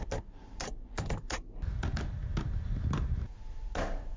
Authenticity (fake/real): real